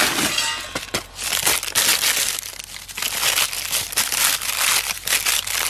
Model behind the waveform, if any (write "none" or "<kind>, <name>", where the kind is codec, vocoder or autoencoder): none